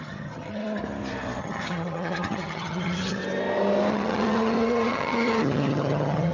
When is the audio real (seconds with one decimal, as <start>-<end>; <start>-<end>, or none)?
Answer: 0.6-1.4; 3.2-3.9